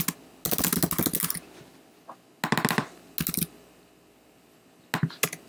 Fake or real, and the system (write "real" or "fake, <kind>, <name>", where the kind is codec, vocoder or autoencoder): real